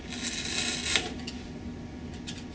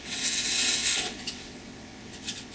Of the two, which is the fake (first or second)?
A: second